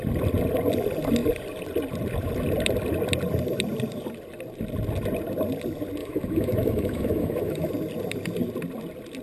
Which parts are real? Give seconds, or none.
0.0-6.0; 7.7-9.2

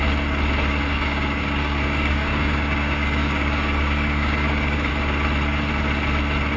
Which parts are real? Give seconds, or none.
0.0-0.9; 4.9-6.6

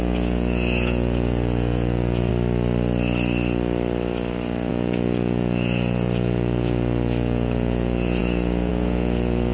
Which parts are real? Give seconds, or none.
2.3-4.7

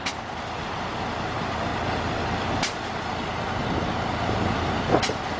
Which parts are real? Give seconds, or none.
1.7-4.9

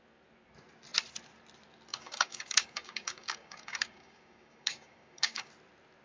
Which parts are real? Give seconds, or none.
0.0-1.9; 5.5-6.0

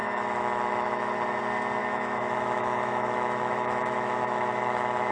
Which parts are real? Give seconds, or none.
1.4-1.8